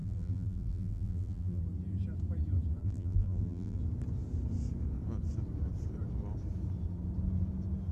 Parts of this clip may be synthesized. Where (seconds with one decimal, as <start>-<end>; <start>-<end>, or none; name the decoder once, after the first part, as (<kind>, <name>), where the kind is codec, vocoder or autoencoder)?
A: 0.0-1.6 (vocoder, BigVGAN v2); 2.8-3.8